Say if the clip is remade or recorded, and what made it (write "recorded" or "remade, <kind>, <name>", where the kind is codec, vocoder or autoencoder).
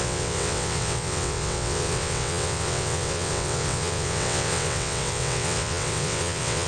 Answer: remade, vocoder, WaveNeXt